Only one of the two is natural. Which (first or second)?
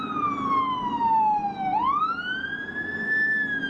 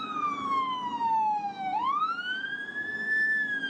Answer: first